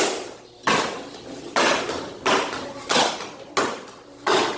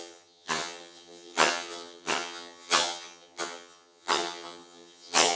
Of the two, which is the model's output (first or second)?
second